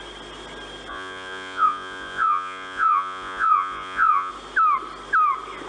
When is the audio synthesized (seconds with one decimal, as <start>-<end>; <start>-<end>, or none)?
0.9-4.3